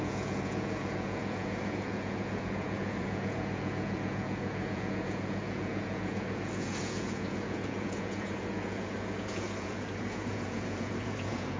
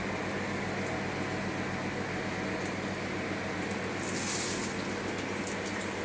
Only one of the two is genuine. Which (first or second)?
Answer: second